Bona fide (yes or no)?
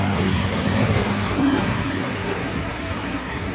no